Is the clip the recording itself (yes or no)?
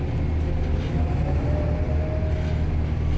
yes